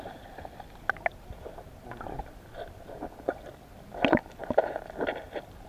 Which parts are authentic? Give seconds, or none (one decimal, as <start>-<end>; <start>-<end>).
0.0-1.1; 1.6-5.7

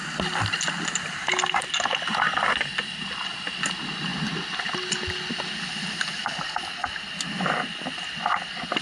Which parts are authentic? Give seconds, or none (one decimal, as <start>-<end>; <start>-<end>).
0.0-8.8

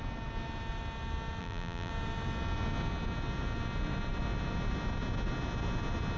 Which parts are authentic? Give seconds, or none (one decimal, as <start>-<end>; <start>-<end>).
0.0-1.4; 1.9-6.2

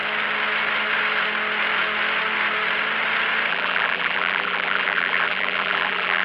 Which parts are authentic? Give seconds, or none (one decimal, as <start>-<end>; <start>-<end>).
0.0-3.5

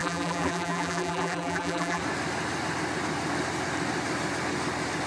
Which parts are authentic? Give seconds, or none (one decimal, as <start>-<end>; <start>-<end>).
2.0-5.1

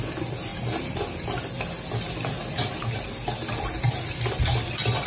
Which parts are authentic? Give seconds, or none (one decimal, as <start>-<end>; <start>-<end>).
0.0-5.1